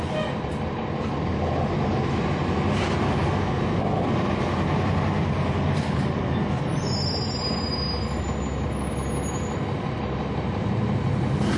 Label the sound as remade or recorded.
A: recorded